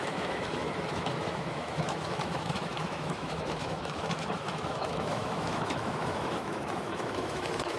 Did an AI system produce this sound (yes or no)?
yes